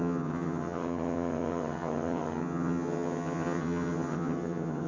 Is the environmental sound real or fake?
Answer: fake